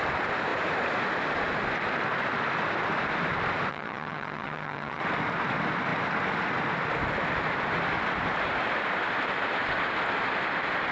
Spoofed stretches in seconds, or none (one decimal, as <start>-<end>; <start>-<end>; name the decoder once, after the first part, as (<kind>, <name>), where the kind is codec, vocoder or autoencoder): 3.7-5.0 (vocoder, HiFi-GAN)